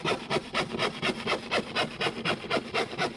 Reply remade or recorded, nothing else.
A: recorded